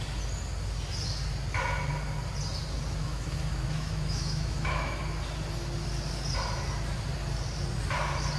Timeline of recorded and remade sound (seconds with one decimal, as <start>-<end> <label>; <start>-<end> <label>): 0.0-3.0 recorded; 3.0-5.0 remade; 5.0-8.4 recorded